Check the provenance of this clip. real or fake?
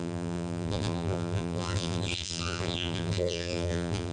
fake